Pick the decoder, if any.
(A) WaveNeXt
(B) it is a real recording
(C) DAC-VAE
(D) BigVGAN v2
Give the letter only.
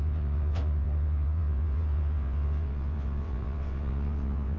A